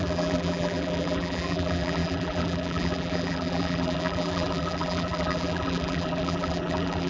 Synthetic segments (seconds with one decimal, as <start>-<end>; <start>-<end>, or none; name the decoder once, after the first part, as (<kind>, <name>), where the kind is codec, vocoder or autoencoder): 0.0-7.1 (vocoder, BigVGAN v2)